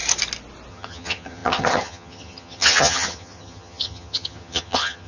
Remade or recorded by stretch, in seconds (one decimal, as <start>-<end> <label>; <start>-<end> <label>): 0.0-0.7 recorded; 0.7-5.1 remade